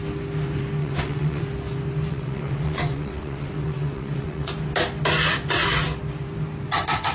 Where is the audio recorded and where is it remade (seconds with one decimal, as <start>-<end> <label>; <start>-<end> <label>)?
0.0-0.8 recorded; 0.8-1.4 remade; 1.4-2.1 recorded; 2.1-4.5 remade; 4.5-7.1 recorded